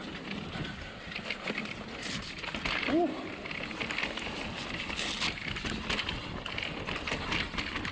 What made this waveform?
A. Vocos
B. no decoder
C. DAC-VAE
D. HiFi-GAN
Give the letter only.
B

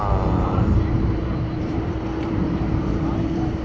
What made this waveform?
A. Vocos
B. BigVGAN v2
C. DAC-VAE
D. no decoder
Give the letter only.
B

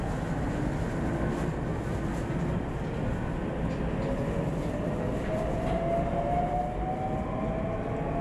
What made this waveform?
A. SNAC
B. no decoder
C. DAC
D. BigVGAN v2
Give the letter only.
B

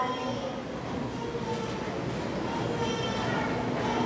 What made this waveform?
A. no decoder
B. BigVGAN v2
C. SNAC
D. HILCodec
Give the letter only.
A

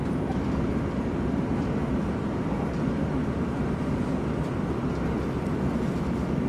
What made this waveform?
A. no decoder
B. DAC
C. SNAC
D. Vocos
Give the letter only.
A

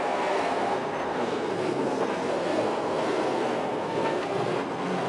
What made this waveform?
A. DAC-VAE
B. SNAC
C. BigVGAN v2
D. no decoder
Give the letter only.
B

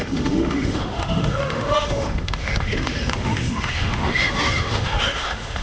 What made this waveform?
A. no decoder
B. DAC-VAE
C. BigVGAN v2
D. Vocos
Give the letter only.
B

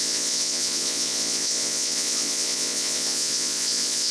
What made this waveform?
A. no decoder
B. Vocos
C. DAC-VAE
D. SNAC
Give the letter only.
B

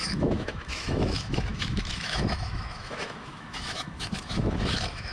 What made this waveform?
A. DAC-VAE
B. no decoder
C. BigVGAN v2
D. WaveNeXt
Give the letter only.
A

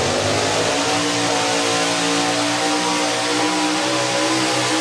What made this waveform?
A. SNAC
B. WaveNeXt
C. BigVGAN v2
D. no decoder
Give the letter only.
D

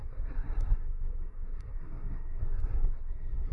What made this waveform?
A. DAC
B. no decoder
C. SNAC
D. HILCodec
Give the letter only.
C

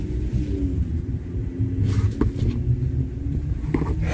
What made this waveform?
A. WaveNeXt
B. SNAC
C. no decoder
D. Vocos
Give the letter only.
C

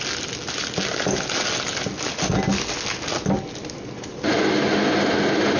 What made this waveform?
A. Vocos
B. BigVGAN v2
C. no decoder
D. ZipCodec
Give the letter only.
C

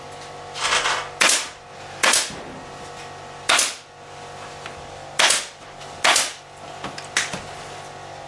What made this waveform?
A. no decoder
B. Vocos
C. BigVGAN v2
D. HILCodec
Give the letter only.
A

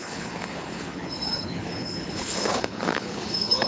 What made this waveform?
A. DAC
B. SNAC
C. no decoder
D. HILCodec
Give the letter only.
D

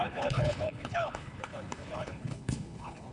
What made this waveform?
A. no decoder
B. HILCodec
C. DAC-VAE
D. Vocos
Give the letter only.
B